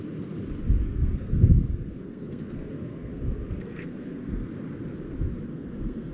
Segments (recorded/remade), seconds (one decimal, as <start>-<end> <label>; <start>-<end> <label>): 0.0-0.8 recorded; 0.8-4.5 remade; 4.5-5.5 recorded; 5.5-6.1 remade